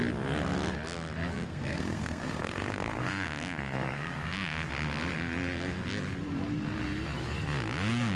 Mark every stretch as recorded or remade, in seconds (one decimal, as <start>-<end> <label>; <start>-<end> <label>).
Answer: 0.0-1.3 recorded; 1.3-4.7 remade; 4.7-8.2 recorded

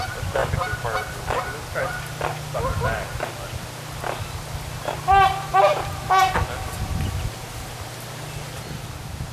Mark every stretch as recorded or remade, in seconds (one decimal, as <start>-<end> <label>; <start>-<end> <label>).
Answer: 0.0-9.3 recorded

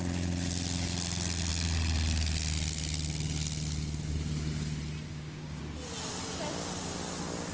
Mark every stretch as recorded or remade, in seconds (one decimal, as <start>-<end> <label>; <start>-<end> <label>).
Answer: 0.0-5.1 recorded; 5.1-5.6 remade; 5.6-7.5 recorded

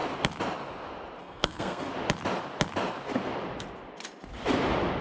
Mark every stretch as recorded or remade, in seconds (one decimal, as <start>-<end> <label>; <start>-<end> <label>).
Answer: 0.0-1.2 recorded; 1.2-1.9 remade; 1.9-5.0 recorded

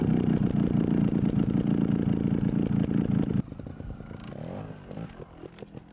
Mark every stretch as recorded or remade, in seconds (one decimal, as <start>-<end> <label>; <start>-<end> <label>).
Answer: 0.0-1.6 remade; 1.6-3.3 recorded; 3.3-4.0 remade; 4.0-5.9 recorded

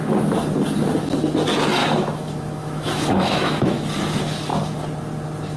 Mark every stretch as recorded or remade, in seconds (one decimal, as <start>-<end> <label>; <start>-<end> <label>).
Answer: 0.0-1.8 recorded; 1.8-3.8 remade; 3.8-5.6 recorded